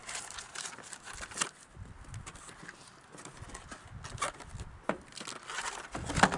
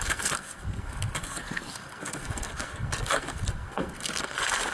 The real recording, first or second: first